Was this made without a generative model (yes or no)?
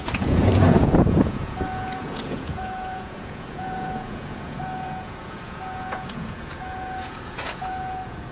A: no